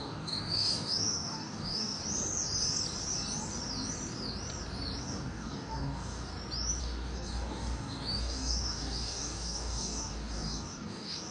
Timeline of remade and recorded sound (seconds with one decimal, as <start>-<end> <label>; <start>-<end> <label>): 0.0-2.0 remade; 2.0-5.0 recorded; 5.0-6.3 remade; 6.3-6.8 recorded; 6.8-11.3 remade